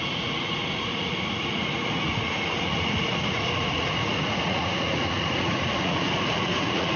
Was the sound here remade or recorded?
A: remade